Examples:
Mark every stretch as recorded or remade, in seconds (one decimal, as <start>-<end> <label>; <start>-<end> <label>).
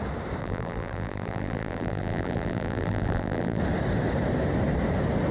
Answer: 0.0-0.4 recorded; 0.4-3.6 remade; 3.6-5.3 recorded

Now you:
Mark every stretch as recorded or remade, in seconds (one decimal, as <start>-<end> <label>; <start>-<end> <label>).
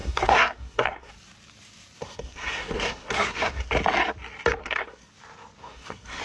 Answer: 0.0-1.1 remade; 1.1-2.0 recorded; 2.0-3.7 remade; 3.7-4.6 recorded; 4.6-5.1 remade; 5.1-5.6 recorded; 5.6-6.2 remade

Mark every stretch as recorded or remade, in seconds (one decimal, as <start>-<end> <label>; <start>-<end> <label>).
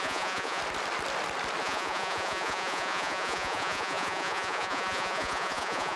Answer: 0.0-0.6 remade; 0.6-1.6 recorded; 1.6-6.0 remade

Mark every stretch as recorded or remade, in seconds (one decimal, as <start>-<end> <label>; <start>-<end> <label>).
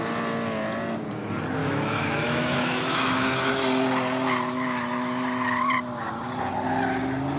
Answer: 0.0-1.6 recorded; 1.6-3.5 remade; 3.5-7.4 recorded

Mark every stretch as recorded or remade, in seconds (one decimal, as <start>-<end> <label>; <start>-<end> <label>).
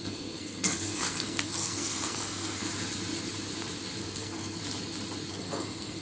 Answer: 0.0-2.7 remade; 2.7-4.0 recorded; 4.0-4.6 remade; 4.6-5.3 recorded; 5.3-6.0 remade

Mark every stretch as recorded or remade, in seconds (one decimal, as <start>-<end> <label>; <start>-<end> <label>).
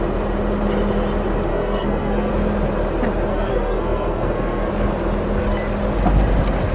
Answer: 0.0-1.5 recorded; 1.5-2.3 remade; 2.3-3.3 recorded; 3.3-4.7 remade; 4.7-6.7 recorded